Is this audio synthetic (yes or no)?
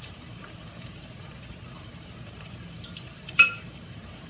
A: yes